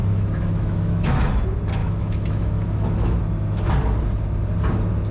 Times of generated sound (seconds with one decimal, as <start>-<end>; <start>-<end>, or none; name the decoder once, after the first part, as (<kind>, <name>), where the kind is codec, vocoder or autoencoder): 0.0-1.3 (autoencoder, DAC-VAE); 1.8-3.2